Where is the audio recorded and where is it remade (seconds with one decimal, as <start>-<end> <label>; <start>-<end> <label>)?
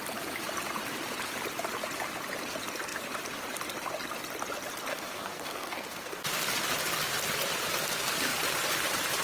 0.0-4.9 recorded; 4.9-6.2 remade; 6.2-9.2 recorded